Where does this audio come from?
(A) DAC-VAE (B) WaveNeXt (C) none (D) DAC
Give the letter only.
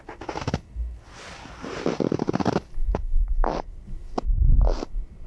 C